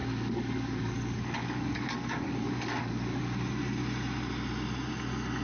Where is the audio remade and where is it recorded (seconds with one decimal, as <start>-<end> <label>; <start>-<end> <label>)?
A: 0.0-3.2 remade; 3.2-5.4 recorded

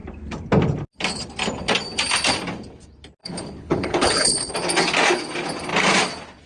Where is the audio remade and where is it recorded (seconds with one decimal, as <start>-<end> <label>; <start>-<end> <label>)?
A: 0.0-3.2 recorded; 3.2-4.5 remade; 4.5-6.5 recorded

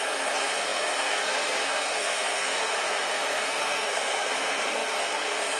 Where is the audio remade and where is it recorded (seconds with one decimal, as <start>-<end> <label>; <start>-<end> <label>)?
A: 0.0-5.6 remade